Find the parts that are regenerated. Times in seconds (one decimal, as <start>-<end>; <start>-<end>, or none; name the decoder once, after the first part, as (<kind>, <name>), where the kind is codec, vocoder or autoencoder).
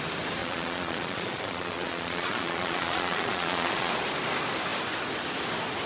0.4-3.9 (vocoder, Vocos)